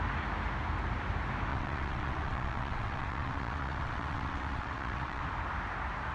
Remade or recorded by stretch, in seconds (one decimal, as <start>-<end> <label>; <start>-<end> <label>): 0.0-1.5 recorded; 1.5-5.2 remade; 5.2-6.1 recorded